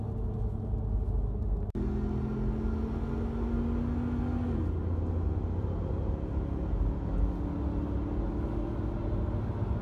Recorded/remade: recorded